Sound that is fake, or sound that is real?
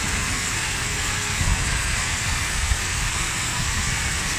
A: fake